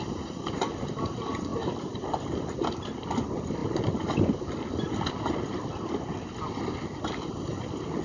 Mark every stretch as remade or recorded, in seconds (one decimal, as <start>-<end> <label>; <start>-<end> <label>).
0.0-8.0 recorded